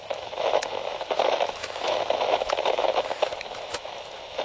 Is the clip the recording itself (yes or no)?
no